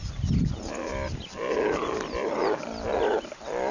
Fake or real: real